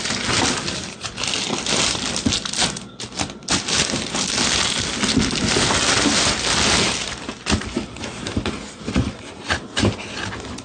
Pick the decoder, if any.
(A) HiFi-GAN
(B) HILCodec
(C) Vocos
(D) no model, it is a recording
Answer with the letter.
D